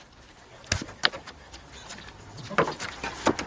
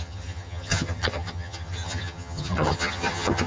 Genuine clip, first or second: first